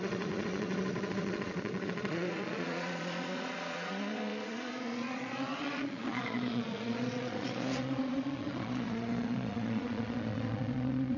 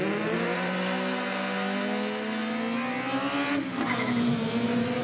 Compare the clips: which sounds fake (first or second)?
first